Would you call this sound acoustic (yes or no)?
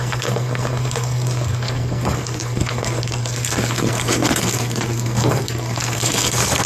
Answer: no